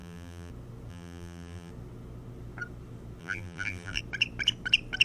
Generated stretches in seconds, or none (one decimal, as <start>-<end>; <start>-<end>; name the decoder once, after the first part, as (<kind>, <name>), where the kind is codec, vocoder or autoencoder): 0.0-0.5 (vocoder, BigVGAN v2); 0.9-1.7; 3.2-4.0